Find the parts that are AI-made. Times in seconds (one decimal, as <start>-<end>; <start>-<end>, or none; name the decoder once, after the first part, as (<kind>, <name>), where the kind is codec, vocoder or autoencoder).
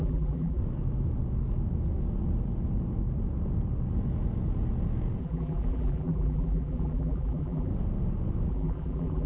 0.0-0.6 (vocoder, BigVGAN v2); 5.2-7.7; 8.5-9.3